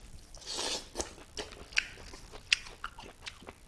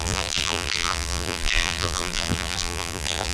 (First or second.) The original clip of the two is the first